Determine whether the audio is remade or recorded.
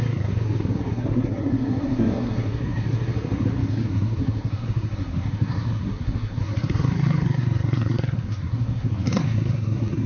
remade